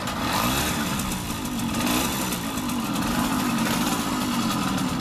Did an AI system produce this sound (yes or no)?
no